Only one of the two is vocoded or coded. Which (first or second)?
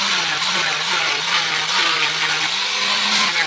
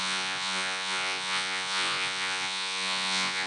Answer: second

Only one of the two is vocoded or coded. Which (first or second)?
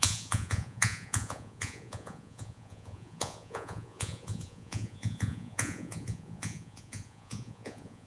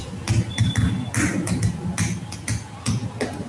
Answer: first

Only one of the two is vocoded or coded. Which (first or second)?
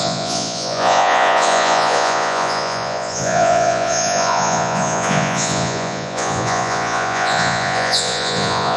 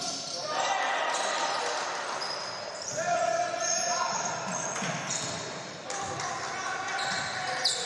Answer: first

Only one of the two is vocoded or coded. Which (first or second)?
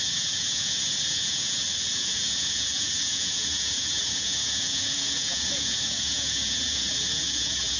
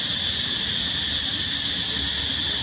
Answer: first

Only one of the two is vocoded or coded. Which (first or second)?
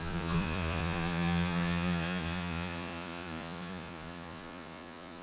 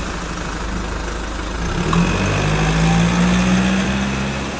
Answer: first